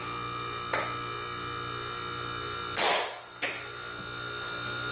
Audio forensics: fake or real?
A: real